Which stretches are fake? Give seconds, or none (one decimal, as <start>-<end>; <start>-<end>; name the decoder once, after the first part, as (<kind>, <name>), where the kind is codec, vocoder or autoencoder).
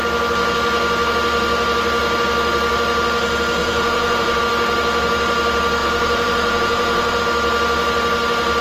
3.6-4.4 (vocoder, Vocos); 5.8-7.2